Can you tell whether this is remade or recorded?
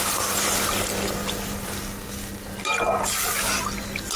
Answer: recorded